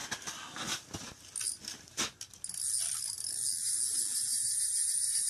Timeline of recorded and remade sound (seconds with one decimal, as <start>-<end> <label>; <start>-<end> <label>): 0.0-4.3 recorded; 4.3-5.3 remade